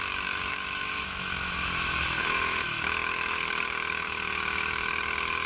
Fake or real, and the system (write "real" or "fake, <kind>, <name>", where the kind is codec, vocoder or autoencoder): fake, autoencoder, DAC-VAE